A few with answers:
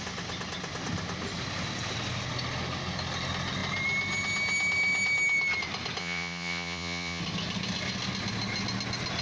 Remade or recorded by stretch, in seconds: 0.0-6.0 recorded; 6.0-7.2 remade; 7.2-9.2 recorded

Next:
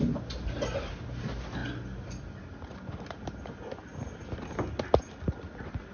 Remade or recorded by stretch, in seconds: 0.0-5.9 recorded

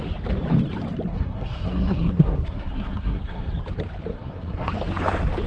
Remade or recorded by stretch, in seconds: 0.0-1.1 recorded; 1.1-3.5 remade; 3.5-4.1 recorded; 4.1-4.7 remade; 4.7-5.5 recorded